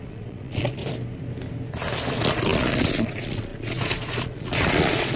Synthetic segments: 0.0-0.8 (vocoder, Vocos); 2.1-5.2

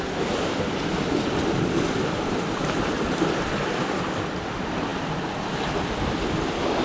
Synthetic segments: 0.0-4.9 (vocoder, BigVGAN v2); 5.8-6.8